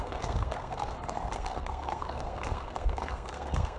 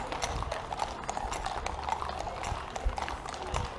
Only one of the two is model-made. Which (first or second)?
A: first